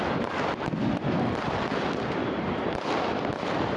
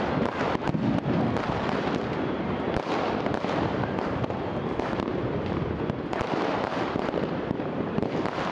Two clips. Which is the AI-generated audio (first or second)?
first